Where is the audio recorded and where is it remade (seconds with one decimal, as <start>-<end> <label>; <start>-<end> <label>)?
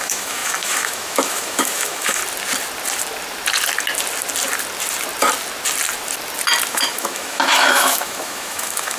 0.0-2.2 remade; 2.2-6.7 recorded; 6.7-9.0 remade